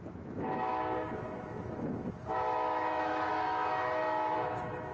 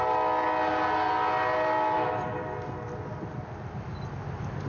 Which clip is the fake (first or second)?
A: first